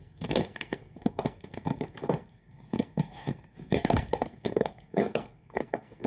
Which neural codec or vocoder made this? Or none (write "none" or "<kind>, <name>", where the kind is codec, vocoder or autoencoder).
codec, SNAC